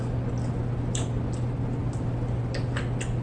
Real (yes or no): yes